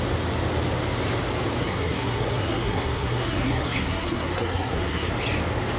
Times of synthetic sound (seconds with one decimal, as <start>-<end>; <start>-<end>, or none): 1.6-5.1